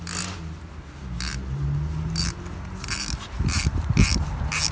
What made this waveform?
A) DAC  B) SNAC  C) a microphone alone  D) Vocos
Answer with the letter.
C